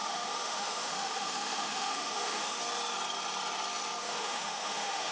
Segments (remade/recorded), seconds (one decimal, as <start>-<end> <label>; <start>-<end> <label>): 0.0-2.6 remade; 2.6-4.0 recorded; 4.0-5.1 remade